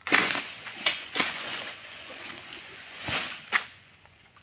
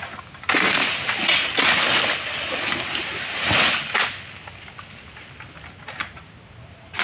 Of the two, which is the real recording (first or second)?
second